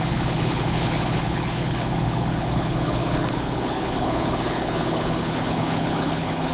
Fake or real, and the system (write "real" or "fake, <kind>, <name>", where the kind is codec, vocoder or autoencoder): fake, codec, HILCodec